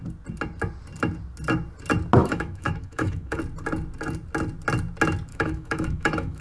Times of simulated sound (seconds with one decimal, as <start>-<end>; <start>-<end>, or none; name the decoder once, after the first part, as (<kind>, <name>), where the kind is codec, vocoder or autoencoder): 2.2-3.4 (autoencoder, DAC-VAE); 5.3-6.4